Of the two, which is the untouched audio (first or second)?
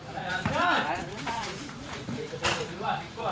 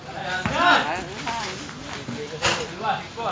second